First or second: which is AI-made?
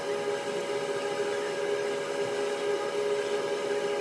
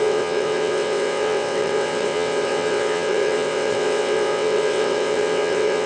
second